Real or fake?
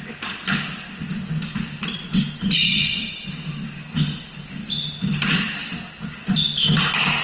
real